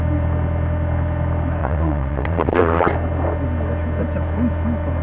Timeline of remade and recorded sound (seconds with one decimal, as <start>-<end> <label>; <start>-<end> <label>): 0.0-1.6 recorded; 1.6-2.9 remade; 2.9-5.0 recorded